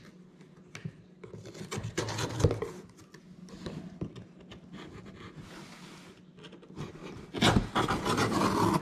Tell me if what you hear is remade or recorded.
recorded